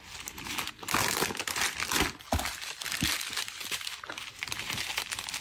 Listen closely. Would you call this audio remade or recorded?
recorded